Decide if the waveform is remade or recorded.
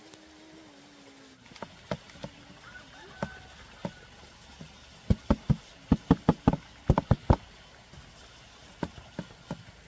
recorded